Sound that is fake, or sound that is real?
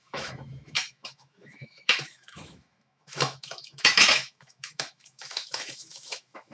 fake